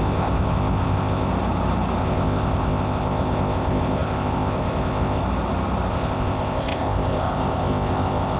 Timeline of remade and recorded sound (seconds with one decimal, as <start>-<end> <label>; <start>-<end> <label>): 0.0-1.3 remade; 1.3-2.0 recorded; 2.0-5.2 remade; 5.2-5.9 recorded; 5.9-8.4 remade